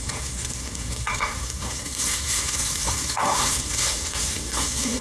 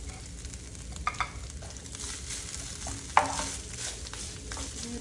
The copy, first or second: first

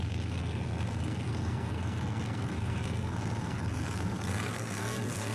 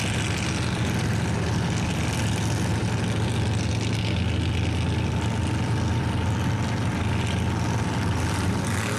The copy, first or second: first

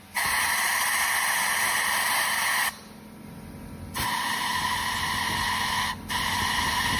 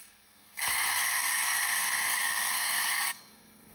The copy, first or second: second